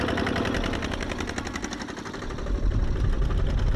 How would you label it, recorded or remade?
recorded